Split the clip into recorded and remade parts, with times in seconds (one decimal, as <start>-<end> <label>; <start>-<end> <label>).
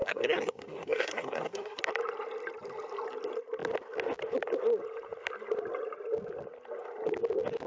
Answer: 0.0-1.8 remade; 1.8-7.7 recorded